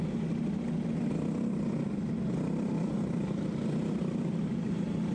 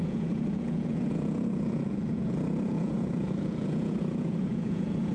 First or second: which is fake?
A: second